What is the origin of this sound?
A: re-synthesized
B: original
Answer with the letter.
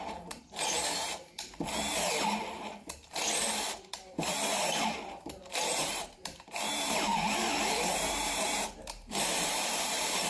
A